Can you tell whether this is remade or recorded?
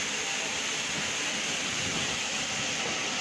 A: remade